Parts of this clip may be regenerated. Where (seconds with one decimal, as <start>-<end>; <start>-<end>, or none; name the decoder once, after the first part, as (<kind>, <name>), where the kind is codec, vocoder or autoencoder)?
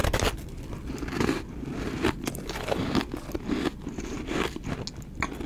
0.0-2.9 (vocoder, BigVGAN v2)